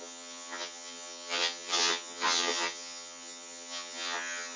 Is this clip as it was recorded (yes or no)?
no